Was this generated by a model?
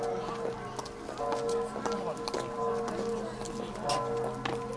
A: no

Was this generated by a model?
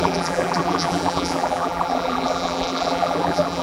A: yes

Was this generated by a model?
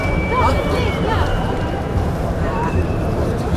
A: yes